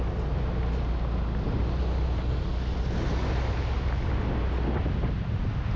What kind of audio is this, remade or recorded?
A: recorded